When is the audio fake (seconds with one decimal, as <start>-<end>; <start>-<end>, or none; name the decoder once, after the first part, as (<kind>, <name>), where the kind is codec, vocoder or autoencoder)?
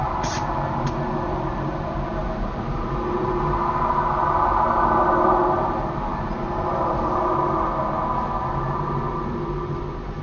0.0-7.7 (vocoder, BigVGAN v2); 8.4-10.2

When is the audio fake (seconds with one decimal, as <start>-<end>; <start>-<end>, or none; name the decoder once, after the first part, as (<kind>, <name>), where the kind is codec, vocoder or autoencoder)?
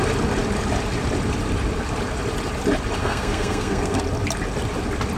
3.0-4.0 (codec, SNAC)